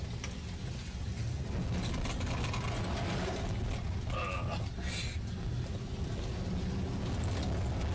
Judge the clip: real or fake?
real